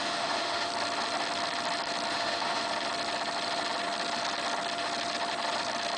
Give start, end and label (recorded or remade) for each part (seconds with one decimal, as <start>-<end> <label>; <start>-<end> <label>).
0.0-0.7 remade; 0.7-2.1 recorded; 2.1-2.6 remade; 2.6-6.0 recorded